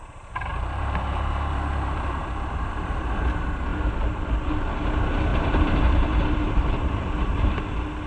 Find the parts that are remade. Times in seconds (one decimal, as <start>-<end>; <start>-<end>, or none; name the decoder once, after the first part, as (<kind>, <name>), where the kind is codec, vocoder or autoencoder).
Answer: 0.5-3.1 (vocoder, BigVGAN v2); 5.3-7.6